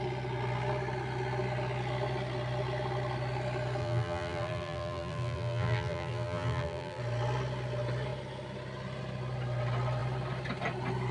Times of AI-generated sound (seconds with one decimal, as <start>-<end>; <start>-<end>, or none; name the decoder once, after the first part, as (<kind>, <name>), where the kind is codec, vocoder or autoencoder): 3.8-7.0 (vocoder, BigVGAN v2)